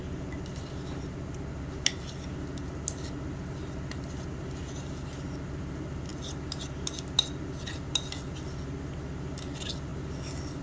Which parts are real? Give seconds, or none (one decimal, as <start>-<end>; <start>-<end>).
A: 0.0-10.6